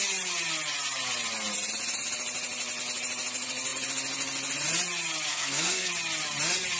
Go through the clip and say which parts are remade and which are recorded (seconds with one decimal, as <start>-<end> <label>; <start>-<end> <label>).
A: 0.0-5.3 recorded; 5.3-5.9 remade; 5.9-6.8 recorded